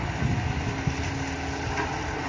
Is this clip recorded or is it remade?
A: recorded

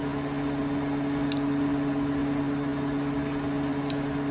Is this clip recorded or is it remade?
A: recorded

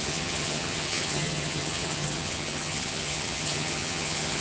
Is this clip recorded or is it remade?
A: remade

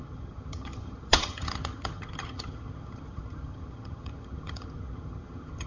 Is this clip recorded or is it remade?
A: remade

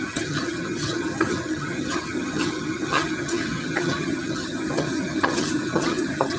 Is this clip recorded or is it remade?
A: remade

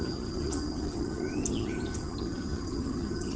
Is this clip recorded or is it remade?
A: remade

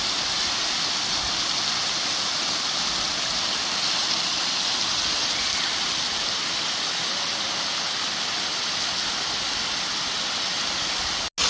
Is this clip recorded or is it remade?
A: recorded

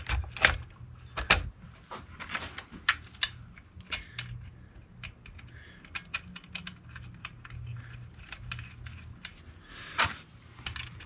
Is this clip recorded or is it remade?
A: recorded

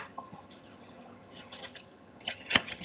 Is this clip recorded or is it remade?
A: remade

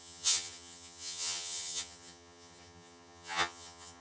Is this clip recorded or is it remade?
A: remade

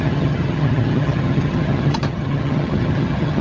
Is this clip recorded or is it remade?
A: remade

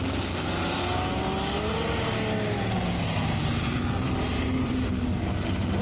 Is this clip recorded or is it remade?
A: recorded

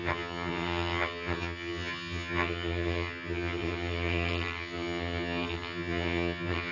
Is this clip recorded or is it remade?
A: remade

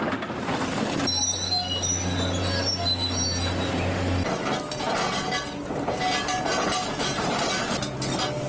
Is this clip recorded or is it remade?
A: recorded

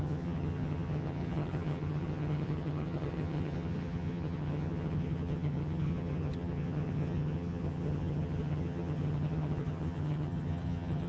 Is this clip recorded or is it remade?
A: remade